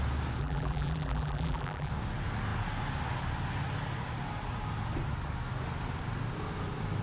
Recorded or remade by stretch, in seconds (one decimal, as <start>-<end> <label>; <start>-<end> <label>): 0.0-0.4 recorded; 0.4-1.9 remade; 1.9-7.0 recorded